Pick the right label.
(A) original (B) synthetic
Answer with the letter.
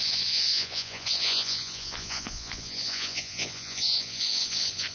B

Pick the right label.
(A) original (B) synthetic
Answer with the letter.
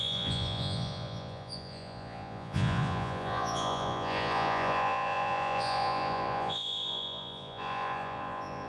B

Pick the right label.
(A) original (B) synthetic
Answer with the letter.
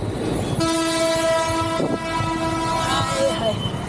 A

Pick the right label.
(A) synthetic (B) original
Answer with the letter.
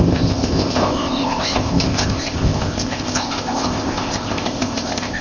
A